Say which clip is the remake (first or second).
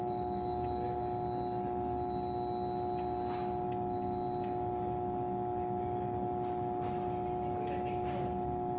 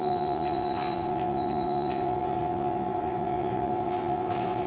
second